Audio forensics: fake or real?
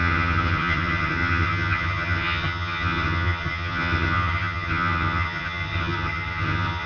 fake